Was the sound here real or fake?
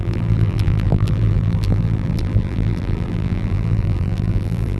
fake